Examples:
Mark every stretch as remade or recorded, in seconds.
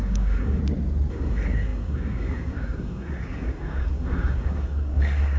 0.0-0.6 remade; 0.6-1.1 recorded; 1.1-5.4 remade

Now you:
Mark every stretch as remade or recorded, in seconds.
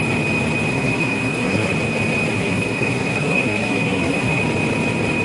0.0-0.7 recorded; 0.7-1.7 remade; 1.7-2.3 recorded; 2.3-4.4 remade; 4.4-5.2 recorded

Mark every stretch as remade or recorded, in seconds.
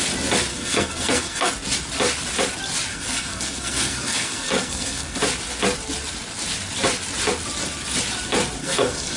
0.0-0.5 recorded; 0.5-1.5 remade; 1.5-2.9 recorded; 2.9-5.2 remade; 5.2-8.6 recorded; 8.6-9.2 remade